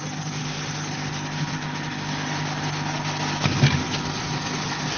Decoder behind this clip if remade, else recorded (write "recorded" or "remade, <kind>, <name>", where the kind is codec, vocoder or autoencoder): recorded